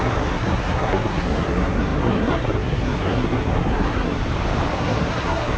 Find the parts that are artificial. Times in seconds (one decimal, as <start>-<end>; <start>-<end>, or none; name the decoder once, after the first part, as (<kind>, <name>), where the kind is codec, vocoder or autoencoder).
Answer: 0.0-4.2 (codec, SNAC); 4.7-5.6